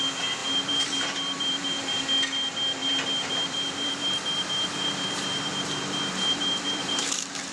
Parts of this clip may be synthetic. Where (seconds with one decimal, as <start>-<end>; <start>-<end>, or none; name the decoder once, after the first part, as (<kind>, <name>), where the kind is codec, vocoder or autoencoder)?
0.4-2.0 (vocoder, BigVGAN v2); 2.8-7.5